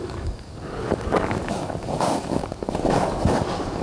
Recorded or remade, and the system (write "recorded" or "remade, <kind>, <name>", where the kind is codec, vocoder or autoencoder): remade, codec, DAC